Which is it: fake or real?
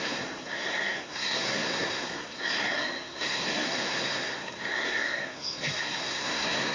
fake